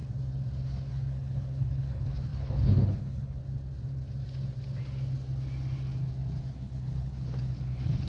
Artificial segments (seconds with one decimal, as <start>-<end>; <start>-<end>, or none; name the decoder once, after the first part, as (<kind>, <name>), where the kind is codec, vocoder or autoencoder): 0.9-3.4 (codec, HILCodec); 6.4-8.1